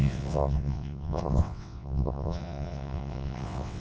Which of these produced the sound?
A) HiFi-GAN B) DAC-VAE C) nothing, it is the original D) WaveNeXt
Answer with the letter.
D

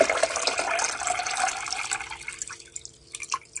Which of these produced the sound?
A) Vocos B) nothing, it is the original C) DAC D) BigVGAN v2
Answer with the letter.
B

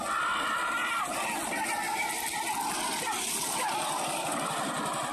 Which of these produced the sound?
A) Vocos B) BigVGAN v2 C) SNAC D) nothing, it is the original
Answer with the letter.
D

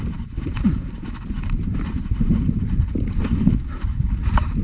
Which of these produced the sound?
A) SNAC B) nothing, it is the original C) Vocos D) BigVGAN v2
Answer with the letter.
D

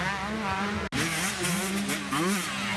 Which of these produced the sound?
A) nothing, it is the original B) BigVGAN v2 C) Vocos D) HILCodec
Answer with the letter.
A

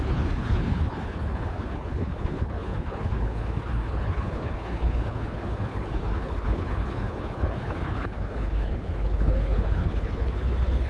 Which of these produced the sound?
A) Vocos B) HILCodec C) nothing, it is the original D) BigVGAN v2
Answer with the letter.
B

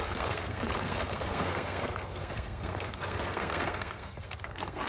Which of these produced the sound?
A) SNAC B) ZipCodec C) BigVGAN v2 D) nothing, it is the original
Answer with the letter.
A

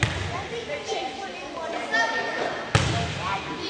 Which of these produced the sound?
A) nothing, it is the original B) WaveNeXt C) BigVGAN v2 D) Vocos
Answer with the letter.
A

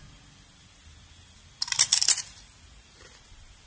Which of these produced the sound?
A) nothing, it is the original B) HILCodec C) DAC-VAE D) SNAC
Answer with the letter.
A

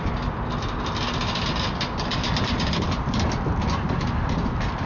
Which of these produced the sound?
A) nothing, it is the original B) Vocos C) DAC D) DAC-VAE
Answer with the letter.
A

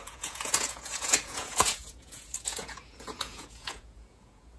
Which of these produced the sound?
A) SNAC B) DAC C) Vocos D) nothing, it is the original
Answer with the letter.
C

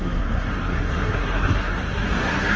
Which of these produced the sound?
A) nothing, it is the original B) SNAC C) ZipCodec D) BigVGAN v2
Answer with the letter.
B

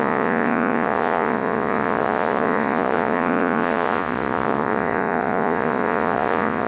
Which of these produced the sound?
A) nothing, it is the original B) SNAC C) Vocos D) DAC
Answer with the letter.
C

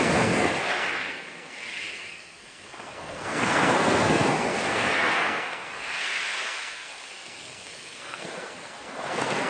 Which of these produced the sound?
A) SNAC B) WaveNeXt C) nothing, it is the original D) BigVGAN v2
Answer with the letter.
A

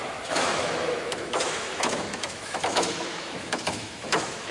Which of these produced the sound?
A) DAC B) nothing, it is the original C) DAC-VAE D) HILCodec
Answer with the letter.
C